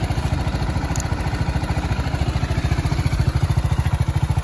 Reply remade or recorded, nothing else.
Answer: recorded